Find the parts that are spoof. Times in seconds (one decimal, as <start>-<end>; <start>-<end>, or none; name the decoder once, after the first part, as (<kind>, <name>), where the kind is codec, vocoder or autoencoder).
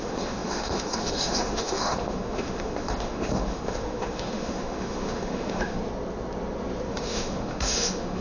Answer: 0.0-5.8 (autoencoder, DAC-VAE); 6.9-8.2